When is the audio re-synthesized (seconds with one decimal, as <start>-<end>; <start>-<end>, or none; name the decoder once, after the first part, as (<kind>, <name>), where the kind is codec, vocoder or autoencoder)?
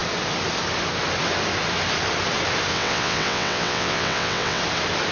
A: 2.7-4.6 (vocoder, WaveNeXt)